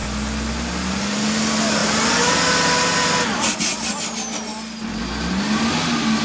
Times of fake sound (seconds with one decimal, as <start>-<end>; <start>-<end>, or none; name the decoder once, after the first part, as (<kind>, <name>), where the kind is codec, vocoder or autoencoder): none